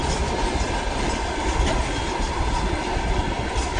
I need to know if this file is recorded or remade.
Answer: recorded